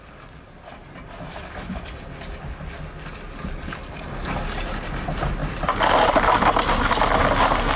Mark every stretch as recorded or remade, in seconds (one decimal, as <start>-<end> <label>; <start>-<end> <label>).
0.0-1.3 recorded; 1.3-1.8 remade; 1.8-7.8 recorded